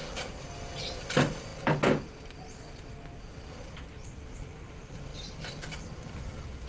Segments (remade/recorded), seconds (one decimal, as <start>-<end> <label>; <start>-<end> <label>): 0.0-6.7 recorded